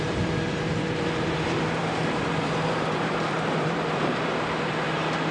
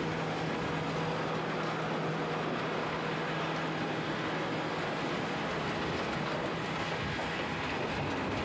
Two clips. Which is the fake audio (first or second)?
first